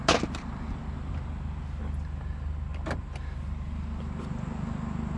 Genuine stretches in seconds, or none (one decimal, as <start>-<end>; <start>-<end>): 0.0-5.2